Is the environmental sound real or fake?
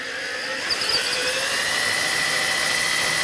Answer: real